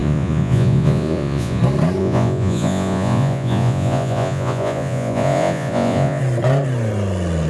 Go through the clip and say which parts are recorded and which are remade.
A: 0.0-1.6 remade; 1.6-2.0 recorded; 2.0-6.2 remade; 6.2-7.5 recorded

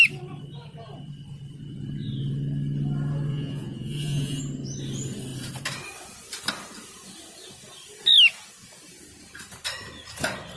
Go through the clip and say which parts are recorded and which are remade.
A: 0.0-3.3 recorded; 3.3-4.4 remade; 4.4-10.6 recorded

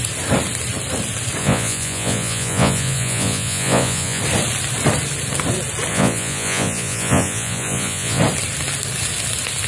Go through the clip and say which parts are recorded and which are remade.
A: 0.0-1.4 recorded; 1.4-4.2 remade; 4.2-5.9 recorded; 5.9-8.2 remade; 8.2-9.7 recorded